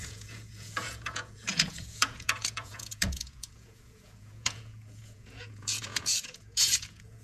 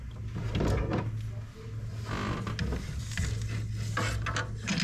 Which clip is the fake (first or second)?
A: first